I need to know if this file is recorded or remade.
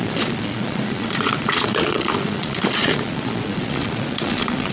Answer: remade